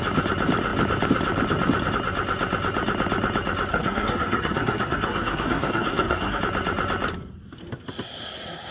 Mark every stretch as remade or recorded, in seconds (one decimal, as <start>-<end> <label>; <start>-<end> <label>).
0.0-3.7 recorded; 3.7-6.4 remade; 6.4-8.7 recorded